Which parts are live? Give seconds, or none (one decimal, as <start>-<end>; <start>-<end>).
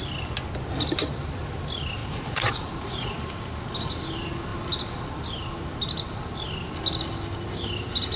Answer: 0.0-2.0; 3.1-8.2